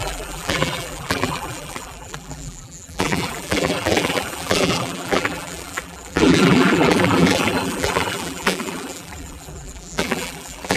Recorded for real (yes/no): no